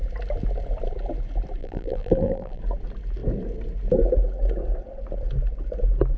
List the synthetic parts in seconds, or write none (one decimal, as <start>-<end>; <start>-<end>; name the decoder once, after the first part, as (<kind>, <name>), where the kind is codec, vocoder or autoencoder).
1.6-2.6 (vocoder, BigVGAN v2)